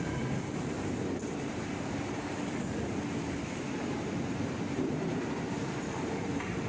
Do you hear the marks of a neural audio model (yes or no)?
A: yes